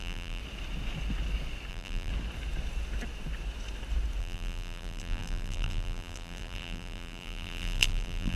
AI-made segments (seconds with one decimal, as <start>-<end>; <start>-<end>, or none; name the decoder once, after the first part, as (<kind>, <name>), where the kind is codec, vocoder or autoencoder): 0.0-0.4 (vocoder, BigVGAN v2); 1.7-2.1; 4.2-8.4